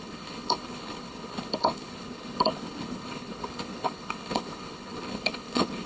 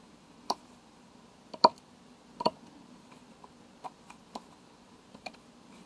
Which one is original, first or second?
second